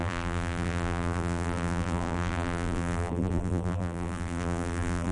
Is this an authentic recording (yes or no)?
no